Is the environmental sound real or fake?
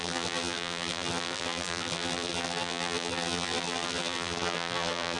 fake